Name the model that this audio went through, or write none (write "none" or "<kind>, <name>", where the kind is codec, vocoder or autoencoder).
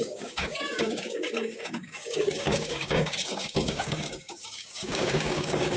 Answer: codec, DAC